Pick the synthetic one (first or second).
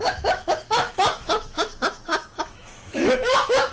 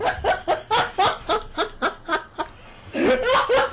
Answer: first